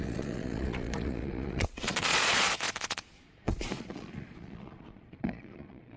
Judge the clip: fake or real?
fake